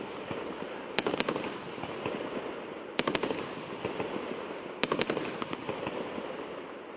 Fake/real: real